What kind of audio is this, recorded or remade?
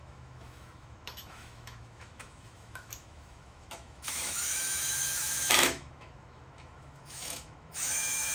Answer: remade